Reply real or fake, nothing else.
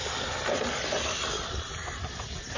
real